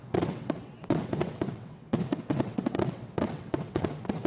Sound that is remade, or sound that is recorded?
remade